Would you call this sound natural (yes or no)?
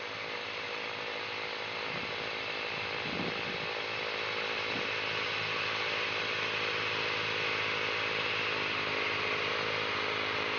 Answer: yes